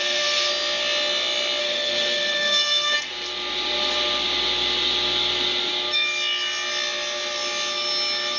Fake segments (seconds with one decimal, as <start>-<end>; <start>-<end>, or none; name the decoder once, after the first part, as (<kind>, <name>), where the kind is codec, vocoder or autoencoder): 0.0-0.5 (codec, SNAC); 1.6-3.1